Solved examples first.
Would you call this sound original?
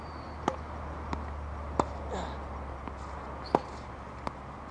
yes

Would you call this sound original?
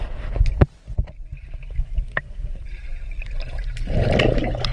yes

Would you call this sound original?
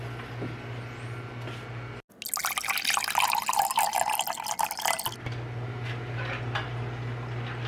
yes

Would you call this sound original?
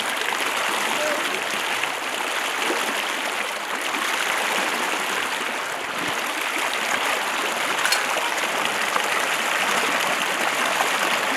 yes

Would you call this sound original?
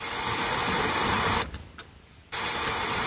yes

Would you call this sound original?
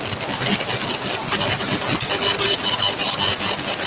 yes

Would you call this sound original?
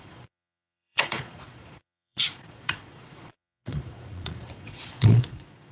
no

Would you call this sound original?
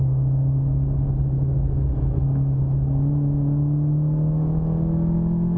yes